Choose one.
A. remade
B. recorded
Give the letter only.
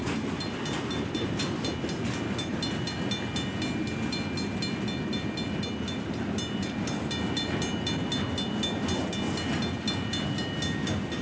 B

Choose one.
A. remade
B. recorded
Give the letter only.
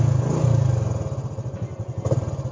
B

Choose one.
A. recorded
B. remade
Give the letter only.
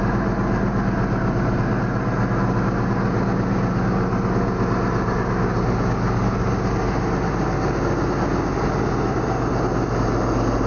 A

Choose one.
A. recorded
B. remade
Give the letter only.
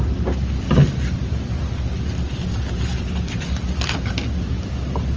A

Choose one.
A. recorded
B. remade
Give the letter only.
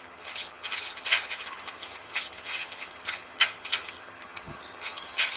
B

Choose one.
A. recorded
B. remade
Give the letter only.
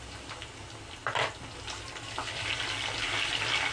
A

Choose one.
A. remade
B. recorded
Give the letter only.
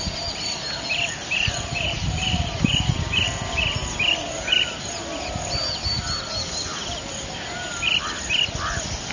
B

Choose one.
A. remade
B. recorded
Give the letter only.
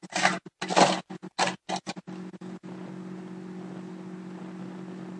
B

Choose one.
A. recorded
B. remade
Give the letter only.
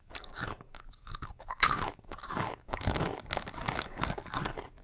B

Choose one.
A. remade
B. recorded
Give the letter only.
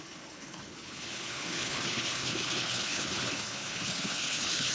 A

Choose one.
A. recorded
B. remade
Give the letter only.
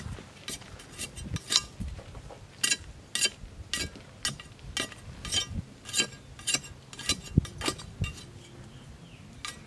A